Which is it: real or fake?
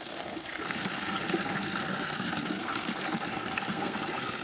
fake